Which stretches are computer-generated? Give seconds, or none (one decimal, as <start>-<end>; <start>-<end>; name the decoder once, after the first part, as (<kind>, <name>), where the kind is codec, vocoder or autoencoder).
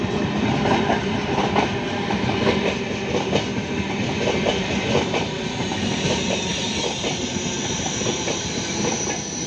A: none